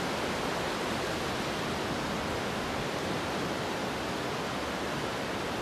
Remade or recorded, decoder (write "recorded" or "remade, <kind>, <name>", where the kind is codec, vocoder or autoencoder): recorded